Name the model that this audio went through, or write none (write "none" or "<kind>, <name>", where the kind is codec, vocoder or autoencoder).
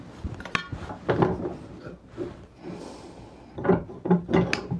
none